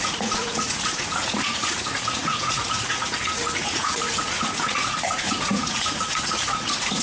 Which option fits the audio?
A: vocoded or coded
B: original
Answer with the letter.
A